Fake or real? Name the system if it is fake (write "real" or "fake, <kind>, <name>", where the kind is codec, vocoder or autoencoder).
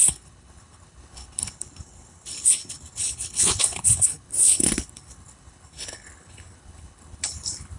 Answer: fake, codec, HILCodec